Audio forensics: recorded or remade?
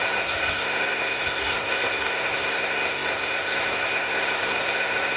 remade